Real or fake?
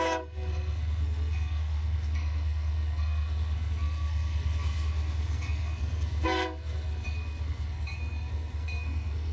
fake